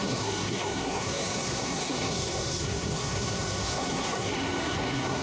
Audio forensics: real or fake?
fake